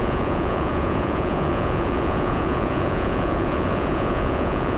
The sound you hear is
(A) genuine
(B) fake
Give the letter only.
B